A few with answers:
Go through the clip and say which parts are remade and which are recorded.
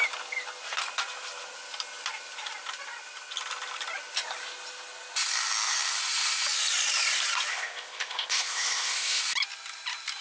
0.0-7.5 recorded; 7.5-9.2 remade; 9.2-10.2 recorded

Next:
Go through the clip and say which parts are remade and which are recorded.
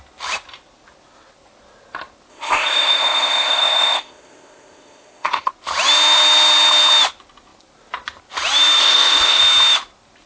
0.0-2.3 recorded; 2.3-5.5 remade; 5.5-8.8 recorded; 8.8-9.4 remade; 9.4-10.3 recorded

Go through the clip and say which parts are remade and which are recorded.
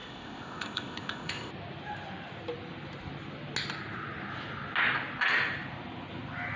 0.0-1.5 remade; 1.5-6.6 recorded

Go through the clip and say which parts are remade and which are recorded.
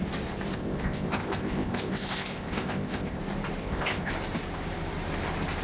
0.0-0.5 recorded; 0.5-3.2 remade; 3.2-3.6 recorded; 3.6-4.1 remade; 4.1-5.6 recorded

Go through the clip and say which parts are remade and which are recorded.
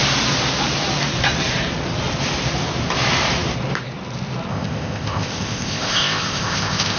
0.0-4.5 recorded; 4.5-7.0 remade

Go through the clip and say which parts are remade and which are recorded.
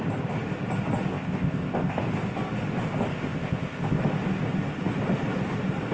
0.0-1.1 recorded; 1.1-2.0 remade; 2.0-3.1 recorded; 3.1-4.0 remade; 4.0-5.9 recorded